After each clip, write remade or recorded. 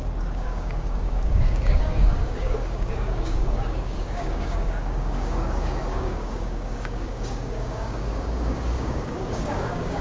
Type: remade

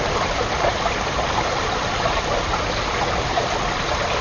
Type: recorded